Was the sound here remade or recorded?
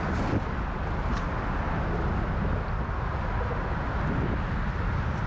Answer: recorded